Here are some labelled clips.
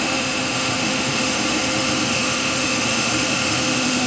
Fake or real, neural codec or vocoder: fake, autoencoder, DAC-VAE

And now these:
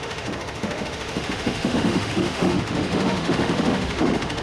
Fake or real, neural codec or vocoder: fake, autoencoder, DAC-VAE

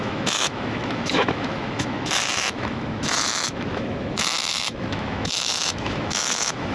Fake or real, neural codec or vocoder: fake, autoencoder, DAC-VAE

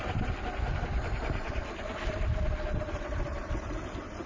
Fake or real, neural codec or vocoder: real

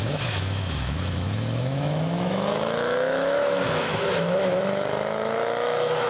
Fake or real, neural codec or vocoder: fake, autoencoder, DAC-VAE